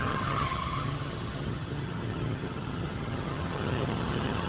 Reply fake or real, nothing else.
fake